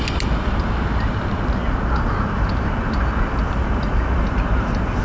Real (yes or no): yes